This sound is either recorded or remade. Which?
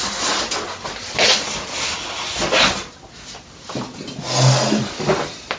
recorded